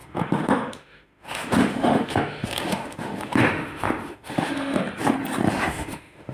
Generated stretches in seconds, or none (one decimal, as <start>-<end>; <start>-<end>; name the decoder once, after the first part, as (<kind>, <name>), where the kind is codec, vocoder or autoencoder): 0.0-4.8 (autoencoder, DAC-VAE); 5.5-6.3